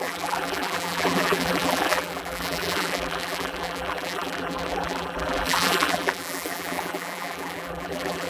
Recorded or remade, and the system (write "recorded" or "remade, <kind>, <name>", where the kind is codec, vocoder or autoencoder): remade, vocoder, BigVGAN v2